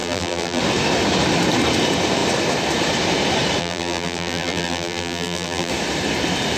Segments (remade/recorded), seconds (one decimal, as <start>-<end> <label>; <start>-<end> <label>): 0.0-0.6 remade; 0.6-3.6 recorded; 3.6-5.7 remade; 5.7-6.6 recorded

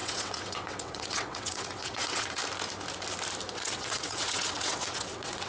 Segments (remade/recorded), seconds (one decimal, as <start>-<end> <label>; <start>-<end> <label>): 0.0-2.4 remade; 2.4-3.5 recorded; 3.5-5.5 remade

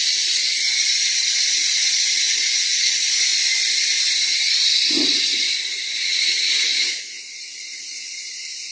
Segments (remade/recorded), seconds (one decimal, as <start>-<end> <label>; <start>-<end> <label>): 0.0-3.3 remade; 3.3-5.7 recorded; 5.7-8.7 remade

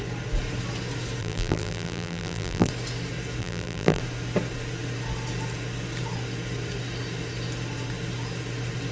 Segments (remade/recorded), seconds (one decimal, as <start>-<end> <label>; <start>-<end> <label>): 0.0-1.2 recorded; 1.2-2.7 remade; 2.7-3.4 recorded; 3.4-4.0 remade; 4.0-8.9 recorded

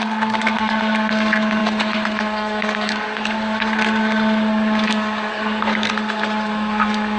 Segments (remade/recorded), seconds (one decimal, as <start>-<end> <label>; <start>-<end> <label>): 0.0-7.2 remade

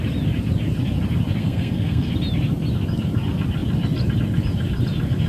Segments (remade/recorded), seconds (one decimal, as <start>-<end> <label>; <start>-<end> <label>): 0.0-1.4 recorded; 1.4-2.1 remade; 2.1-5.3 recorded